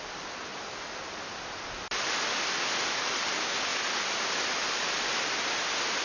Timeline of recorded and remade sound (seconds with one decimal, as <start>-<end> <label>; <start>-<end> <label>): 0.0-6.0 recorded